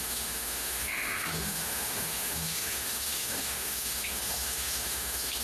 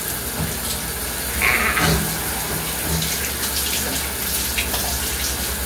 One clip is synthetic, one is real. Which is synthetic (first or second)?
first